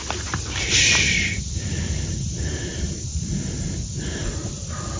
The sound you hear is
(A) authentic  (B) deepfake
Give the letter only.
B